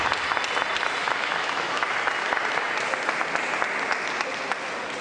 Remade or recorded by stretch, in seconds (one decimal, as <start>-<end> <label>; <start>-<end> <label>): 0.0-1.0 recorded; 1.0-1.9 remade; 1.9-5.0 recorded